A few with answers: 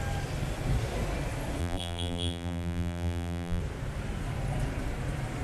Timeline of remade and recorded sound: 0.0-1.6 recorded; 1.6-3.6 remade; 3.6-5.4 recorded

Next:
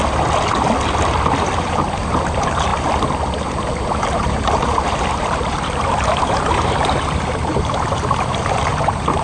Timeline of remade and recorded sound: 0.0-1.5 recorded; 1.5-2.7 remade; 2.7-3.8 recorded; 3.8-9.2 remade

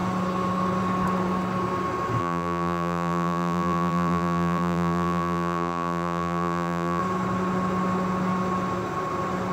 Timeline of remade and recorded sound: 0.0-2.2 recorded; 2.2-7.0 remade; 7.0-9.5 recorded